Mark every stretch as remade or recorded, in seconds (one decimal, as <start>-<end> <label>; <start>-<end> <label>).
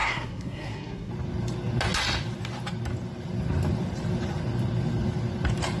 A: 0.0-1.1 remade; 1.1-5.8 recorded